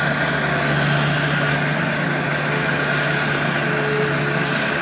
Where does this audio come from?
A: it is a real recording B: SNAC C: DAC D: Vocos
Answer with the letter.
A